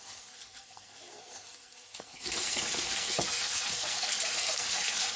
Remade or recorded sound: remade